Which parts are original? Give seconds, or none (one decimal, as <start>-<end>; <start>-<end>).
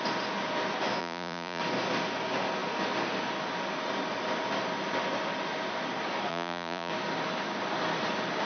0.0-1.0; 1.6-6.3; 6.9-8.5